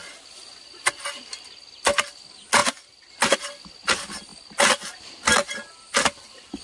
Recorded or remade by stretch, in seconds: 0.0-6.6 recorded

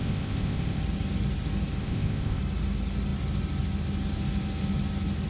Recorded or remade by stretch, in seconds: 0.0-0.8 remade; 0.8-1.8 recorded; 1.8-2.4 remade; 2.4-5.3 recorded